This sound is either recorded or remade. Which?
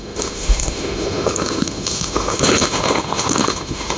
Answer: remade